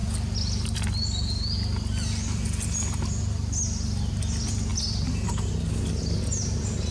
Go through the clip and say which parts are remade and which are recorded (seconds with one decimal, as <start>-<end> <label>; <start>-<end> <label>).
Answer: 0.0-6.9 recorded